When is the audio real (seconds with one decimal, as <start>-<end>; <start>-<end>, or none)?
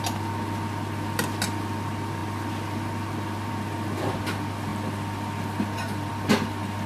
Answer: 0.0-6.9